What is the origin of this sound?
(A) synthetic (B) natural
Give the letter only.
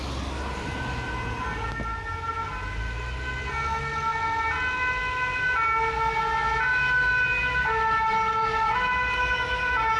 B